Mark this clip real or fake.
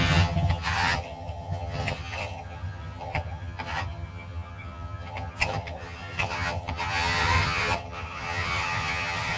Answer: fake